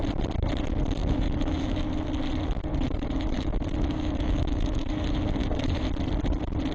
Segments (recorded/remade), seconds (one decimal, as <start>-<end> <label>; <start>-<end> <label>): 0.0-1.0 recorded; 1.0-2.1 remade; 2.1-2.7 recorded; 2.7-5.8 remade; 5.8-6.7 recorded